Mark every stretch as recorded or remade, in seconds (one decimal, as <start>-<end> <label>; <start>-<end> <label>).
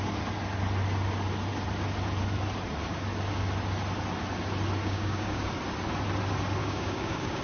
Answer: 0.0-4.8 recorded; 4.8-5.4 remade; 5.4-6.6 recorded; 6.6-7.4 remade